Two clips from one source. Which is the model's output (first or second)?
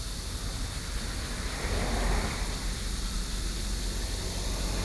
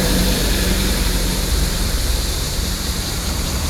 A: second